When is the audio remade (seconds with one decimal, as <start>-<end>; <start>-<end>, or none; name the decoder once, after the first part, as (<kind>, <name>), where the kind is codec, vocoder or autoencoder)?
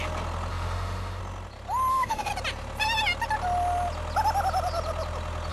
0.5-1.2 (autoencoder, DAC-VAE); 1.9-2.3